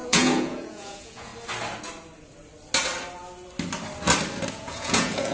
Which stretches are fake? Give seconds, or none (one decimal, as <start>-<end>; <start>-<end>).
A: 0.0-1.3; 4.5-5.3